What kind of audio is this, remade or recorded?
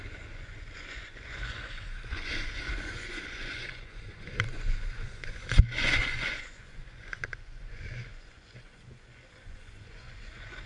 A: remade